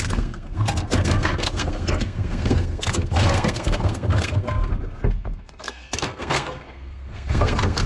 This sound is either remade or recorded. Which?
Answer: remade